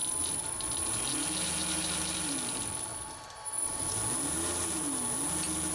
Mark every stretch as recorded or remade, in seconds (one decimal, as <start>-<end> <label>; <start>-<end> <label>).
0.0-5.7 recorded